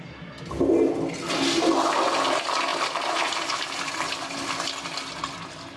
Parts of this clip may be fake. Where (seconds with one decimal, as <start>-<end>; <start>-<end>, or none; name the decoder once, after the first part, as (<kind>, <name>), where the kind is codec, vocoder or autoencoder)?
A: 2.7-4.3 (vocoder, BigVGAN v2)